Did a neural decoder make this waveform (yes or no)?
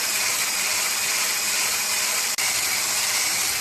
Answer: yes